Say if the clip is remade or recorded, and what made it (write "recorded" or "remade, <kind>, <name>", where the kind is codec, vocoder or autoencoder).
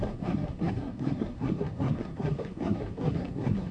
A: remade, codec, SNAC